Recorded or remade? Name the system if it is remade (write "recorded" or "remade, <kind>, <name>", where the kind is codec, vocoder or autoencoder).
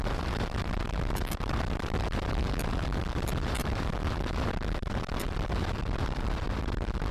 remade, vocoder, BigVGAN v2